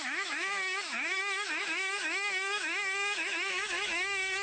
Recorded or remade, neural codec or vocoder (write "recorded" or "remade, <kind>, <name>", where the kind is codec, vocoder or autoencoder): remade, autoencoder, DAC-VAE